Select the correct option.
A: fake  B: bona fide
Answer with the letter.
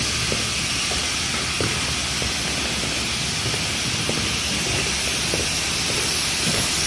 B